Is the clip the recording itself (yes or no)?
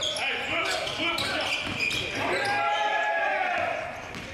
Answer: yes